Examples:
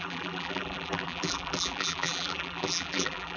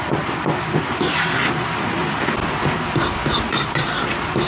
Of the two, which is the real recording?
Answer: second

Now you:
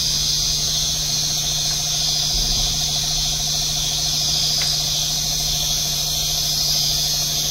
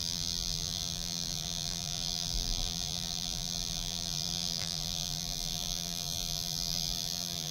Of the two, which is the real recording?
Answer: first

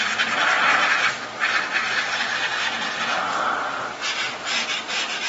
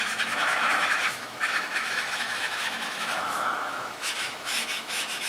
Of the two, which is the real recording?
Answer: first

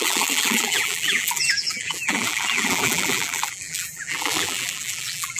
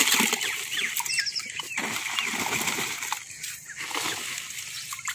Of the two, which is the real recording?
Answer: second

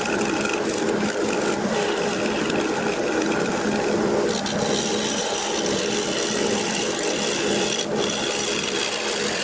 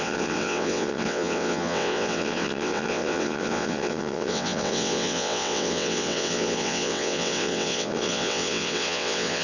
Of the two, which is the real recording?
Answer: first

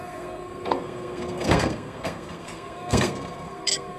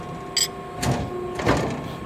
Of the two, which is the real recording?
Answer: second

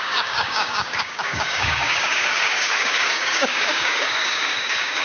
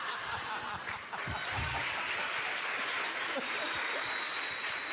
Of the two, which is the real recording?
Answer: second